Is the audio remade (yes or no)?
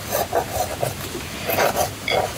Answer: yes